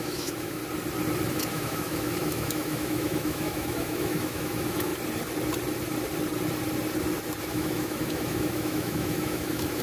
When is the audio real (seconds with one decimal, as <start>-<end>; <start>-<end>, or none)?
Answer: 0.6-1.3; 4.9-7.4